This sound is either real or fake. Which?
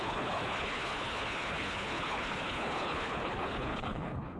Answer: fake